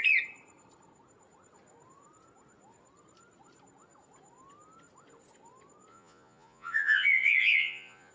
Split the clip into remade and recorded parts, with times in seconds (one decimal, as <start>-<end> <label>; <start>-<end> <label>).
0.0-5.9 recorded; 5.9-8.1 remade